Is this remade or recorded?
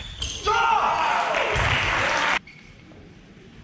recorded